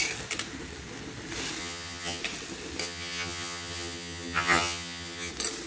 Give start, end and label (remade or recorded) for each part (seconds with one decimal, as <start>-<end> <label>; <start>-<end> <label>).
0.0-1.6 recorded; 1.6-2.2 remade; 2.2-2.8 recorded; 2.8-5.3 remade; 5.3-5.7 recorded